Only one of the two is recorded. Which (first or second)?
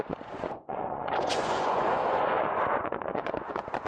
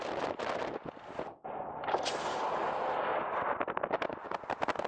second